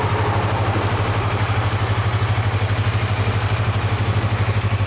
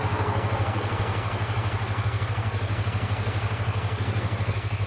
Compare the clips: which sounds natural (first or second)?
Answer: first